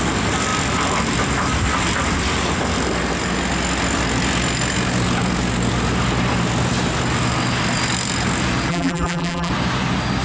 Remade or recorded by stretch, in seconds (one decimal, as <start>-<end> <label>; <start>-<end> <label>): 0.0-8.7 recorded; 8.7-9.5 remade; 9.5-10.2 recorded